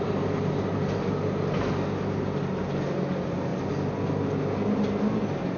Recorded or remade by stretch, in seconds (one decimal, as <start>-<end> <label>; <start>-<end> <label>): 0.0-5.6 recorded